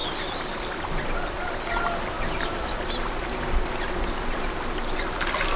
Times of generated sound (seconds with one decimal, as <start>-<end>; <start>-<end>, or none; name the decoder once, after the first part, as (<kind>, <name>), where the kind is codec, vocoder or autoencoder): none